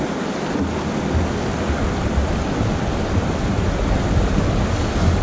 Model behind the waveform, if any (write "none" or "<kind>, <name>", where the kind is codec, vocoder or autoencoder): none